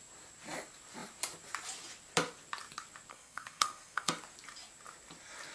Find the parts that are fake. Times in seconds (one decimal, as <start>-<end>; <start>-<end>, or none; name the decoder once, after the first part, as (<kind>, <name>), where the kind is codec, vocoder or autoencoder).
3.1-4.1 (codec, SNAC)